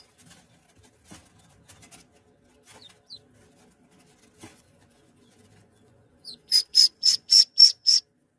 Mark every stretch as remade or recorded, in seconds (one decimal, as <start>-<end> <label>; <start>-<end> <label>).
0.0-4.5 recorded; 4.5-8.0 remade; 8.0-8.4 recorded